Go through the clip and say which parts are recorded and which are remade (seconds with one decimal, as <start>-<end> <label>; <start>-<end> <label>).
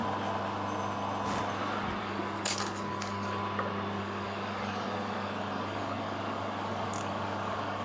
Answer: 0.0-2.0 recorded; 2.0-3.4 remade; 3.4-4.0 recorded; 4.0-7.8 remade